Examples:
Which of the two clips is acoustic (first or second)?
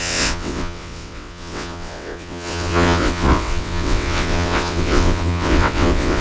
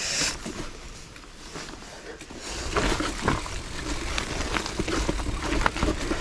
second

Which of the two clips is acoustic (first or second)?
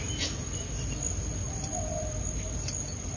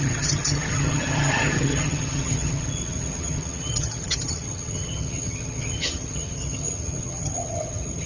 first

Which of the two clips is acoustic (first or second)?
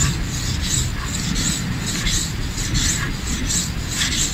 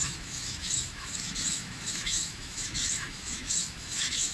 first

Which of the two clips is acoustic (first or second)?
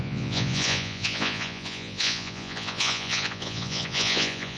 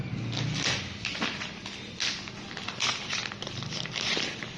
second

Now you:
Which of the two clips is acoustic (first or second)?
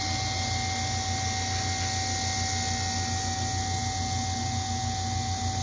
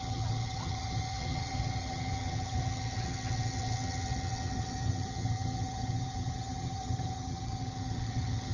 first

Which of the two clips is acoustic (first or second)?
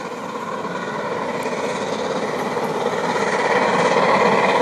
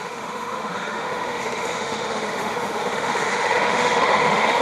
first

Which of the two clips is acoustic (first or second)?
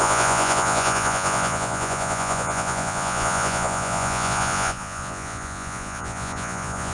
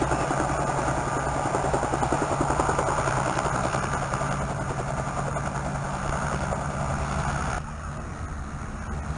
second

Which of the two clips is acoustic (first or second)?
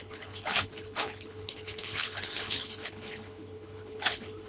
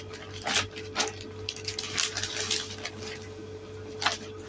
second